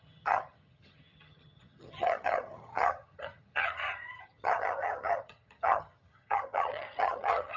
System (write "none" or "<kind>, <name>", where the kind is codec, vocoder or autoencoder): vocoder, HiFi-GAN